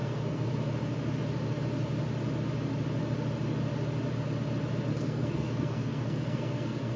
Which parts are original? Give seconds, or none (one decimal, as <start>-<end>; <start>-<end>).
0.5-4.9